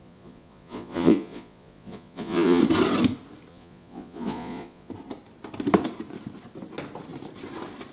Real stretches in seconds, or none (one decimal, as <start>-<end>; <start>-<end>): 2.6-3.5; 4.9-7.9